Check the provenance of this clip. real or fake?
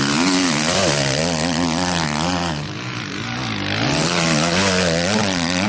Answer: real